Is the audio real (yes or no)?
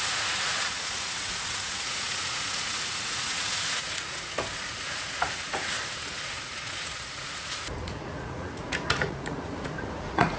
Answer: no